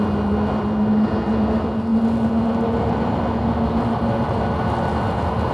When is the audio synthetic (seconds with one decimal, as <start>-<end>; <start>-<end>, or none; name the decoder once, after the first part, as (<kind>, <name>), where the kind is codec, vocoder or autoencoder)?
none